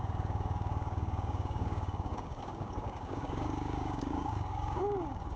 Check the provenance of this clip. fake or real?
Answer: fake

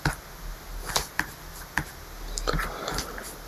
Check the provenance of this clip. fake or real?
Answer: real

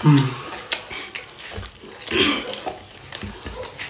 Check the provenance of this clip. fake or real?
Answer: real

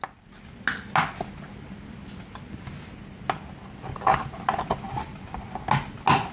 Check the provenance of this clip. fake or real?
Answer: real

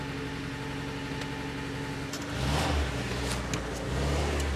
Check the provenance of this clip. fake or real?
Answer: real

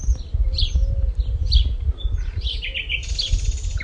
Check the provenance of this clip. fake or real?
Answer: real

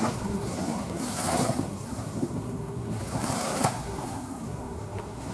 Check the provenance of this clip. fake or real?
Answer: fake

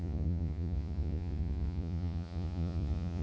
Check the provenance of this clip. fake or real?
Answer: fake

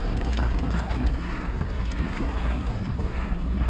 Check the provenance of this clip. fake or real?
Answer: fake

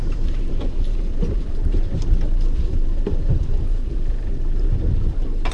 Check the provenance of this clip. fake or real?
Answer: fake